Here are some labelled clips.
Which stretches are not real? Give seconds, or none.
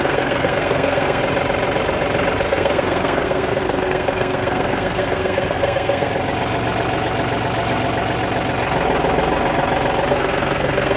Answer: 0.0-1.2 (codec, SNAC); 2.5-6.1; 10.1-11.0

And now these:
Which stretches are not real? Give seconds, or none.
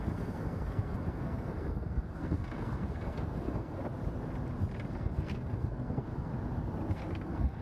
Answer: 0.0-3.8 (codec, SNAC); 4.9-6.3; 6.9-7.6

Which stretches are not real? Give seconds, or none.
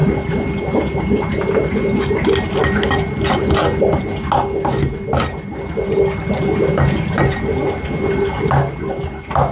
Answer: none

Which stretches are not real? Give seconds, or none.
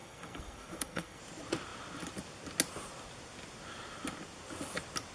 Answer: 0.0-1.2 (codec, SNAC)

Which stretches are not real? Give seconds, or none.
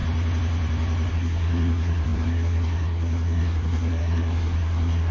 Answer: 1.1-5.1 (codec, SNAC)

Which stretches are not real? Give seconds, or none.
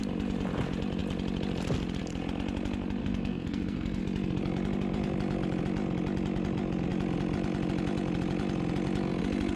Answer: 3.0-4.0 (codec, SNAC)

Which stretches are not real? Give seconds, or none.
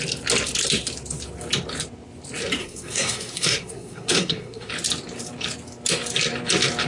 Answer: 2.6-4.7 (codec, SNAC)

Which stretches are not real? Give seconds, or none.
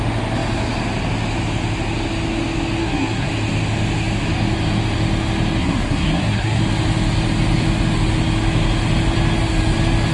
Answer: 2.8-3.3 (codec, SNAC); 5.6-6.6